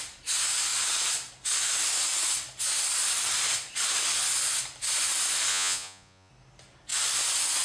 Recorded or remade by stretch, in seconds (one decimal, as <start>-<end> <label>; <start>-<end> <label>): 0.0-5.5 recorded; 5.5-6.3 remade; 6.3-7.6 recorded